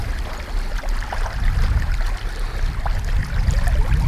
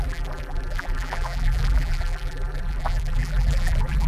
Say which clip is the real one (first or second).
first